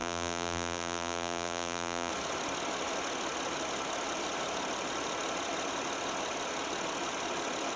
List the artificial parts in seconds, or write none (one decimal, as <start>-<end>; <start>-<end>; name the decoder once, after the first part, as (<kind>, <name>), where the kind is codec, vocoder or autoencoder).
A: 0.0-2.1 (vocoder, BigVGAN v2)